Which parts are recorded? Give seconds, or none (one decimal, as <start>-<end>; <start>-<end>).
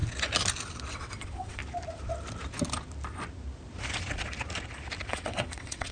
0.0-0.9; 1.6-5.1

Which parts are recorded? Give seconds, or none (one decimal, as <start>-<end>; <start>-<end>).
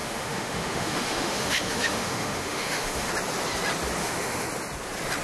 3.1-4.0; 4.5-5.2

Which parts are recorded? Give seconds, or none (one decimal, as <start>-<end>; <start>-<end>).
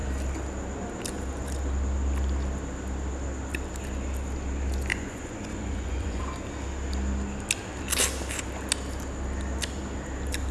0.0-4.9; 6.2-10.5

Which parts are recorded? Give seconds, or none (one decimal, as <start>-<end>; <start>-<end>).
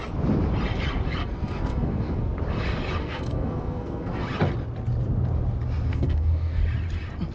0.0-1.2; 2.2-3.0; 4.2-5.9; 6.6-7.3